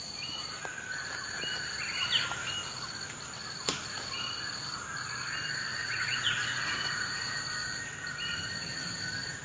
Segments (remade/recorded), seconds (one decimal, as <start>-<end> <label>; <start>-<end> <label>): 0.0-5.8 recorded; 5.8-7.4 remade; 7.4-9.4 recorded